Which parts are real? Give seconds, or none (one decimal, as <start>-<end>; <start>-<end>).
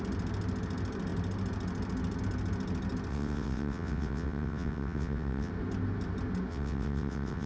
0.0-3.1; 5.5-6.5